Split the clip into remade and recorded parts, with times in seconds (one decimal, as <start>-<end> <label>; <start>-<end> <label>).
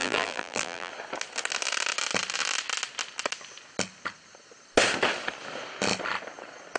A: 0.0-0.9 remade; 0.9-6.8 recorded